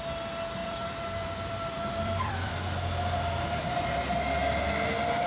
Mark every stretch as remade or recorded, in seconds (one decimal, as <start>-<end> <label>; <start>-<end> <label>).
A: 0.0-0.6 recorded; 0.6-2.5 remade; 2.5-5.3 recorded